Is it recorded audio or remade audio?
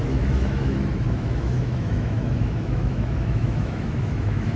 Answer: remade